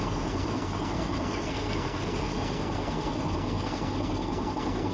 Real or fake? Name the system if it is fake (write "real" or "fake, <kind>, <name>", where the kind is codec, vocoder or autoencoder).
fake, codec, SNAC